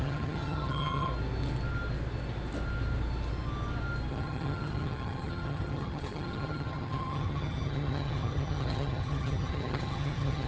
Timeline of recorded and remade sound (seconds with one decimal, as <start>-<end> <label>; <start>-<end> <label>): 0.0-1.1 remade; 1.1-4.1 recorded; 4.1-10.5 remade